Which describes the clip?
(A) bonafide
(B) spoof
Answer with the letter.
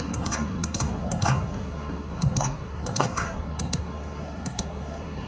B